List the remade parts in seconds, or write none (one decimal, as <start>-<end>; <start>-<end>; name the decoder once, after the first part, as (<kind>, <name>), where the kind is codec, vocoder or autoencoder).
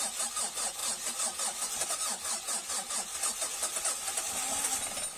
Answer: none